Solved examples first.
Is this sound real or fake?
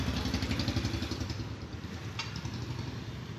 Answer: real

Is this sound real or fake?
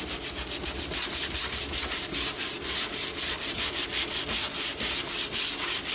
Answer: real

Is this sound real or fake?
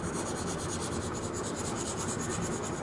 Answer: real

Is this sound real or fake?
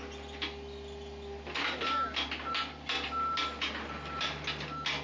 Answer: real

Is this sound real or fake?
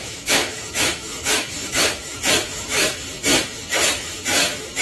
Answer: fake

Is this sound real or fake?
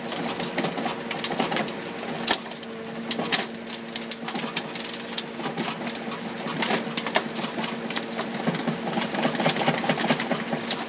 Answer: real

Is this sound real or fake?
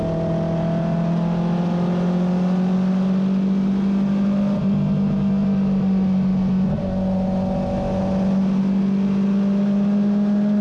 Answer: real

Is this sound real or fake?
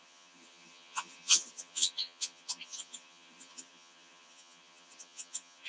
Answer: fake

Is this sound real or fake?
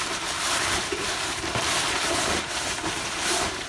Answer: fake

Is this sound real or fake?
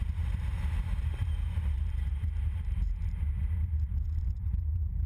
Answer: fake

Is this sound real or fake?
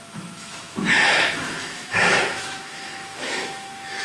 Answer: fake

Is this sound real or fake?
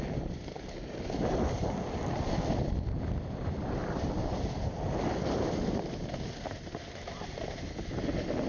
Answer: real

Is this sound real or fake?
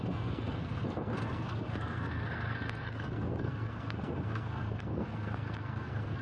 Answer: fake